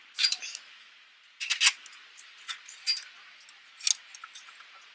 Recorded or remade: recorded